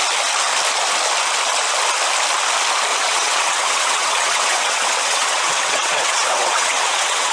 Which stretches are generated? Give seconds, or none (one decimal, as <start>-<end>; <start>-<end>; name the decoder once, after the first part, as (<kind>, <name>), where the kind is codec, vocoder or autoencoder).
2.9-7.3 (vocoder, WaveNeXt)